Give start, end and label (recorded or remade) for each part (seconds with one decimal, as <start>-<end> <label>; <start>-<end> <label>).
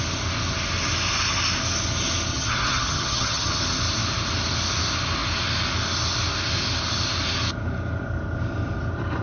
0.0-2.3 recorded; 2.3-3.6 remade; 3.6-9.2 recorded